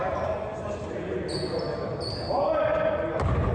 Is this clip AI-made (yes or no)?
no